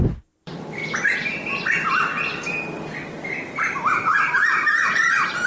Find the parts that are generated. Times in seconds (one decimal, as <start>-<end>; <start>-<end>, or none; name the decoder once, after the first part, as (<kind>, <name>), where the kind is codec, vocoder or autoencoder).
0.0-0.8 (vocoder, BigVGAN v2); 4.1-5.5